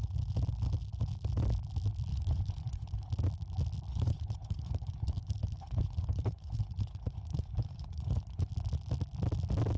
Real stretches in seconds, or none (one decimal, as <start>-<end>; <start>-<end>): 0.0-2.1; 3.1-3.9; 8.5-9.8